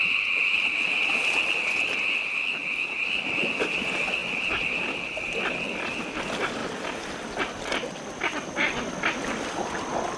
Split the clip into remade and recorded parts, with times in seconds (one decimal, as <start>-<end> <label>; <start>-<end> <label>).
0.0-10.2 recorded